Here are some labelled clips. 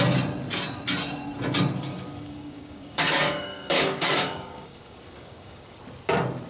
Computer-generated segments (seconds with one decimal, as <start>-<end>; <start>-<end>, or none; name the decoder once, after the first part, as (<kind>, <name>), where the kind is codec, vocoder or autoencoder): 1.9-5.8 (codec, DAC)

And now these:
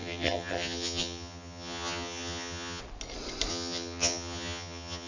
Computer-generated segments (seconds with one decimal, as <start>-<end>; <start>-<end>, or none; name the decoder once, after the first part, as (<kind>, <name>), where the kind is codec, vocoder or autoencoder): 0.0-2.8 (vocoder, HiFi-GAN); 3.5-5.1

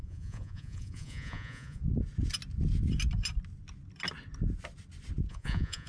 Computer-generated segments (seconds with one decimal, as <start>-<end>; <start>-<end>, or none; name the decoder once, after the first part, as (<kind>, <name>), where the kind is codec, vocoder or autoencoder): 0.0-1.8 (vocoder, Vocos); 5.3-5.9

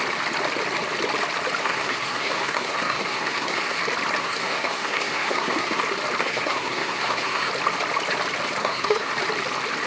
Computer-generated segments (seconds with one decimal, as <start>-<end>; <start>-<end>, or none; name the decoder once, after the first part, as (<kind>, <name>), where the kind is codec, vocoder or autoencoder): 1.6-3.8 (codec, SNAC); 4.2-5.8; 6.2-7.5; 8.6-9.1

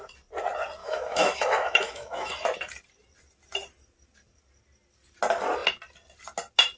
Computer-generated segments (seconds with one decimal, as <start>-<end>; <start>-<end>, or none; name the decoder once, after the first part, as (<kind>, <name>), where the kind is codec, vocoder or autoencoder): 0.8-2.3 (autoencoder, DAC-VAE)

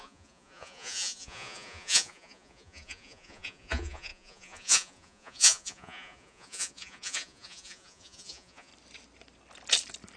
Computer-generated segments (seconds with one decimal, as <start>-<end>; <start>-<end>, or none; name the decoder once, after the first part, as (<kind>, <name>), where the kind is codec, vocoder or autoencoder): 0.0-8.7 (vocoder, Vocos)